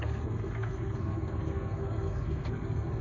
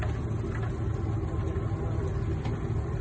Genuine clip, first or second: second